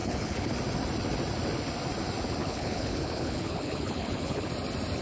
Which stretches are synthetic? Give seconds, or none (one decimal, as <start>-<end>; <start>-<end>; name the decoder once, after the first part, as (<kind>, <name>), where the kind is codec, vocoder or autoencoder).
0.0-0.5 (codec, HILCodec); 2.4-4.5